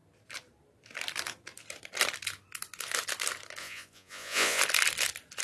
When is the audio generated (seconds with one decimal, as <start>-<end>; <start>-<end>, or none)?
3.6-4.6